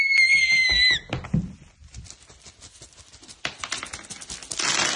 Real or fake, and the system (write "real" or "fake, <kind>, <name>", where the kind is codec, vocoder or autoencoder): real